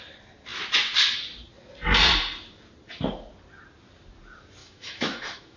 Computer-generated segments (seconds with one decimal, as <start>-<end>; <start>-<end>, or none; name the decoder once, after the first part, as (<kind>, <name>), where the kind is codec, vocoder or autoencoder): 4.6-5.6 (autoencoder, DAC-VAE)